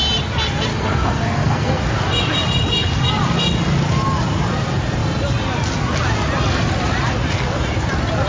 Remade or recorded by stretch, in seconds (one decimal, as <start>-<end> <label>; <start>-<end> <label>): 0.0-0.7 recorded; 0.7-1.8 remade; 1.8-8.3 recorded